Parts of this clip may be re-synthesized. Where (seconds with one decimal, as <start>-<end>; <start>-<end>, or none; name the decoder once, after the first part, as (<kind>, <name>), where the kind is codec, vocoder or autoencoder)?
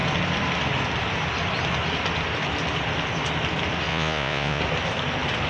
3.9-4.6 (vocoder, Vocos)